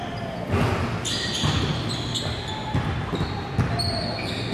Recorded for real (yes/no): yes